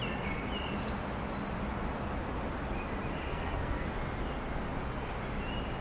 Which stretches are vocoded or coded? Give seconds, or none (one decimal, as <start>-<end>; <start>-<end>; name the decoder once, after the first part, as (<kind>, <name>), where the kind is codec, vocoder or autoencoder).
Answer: 3.3-3.9 (codec, SNAC)